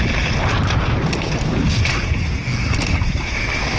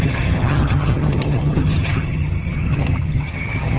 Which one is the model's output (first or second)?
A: second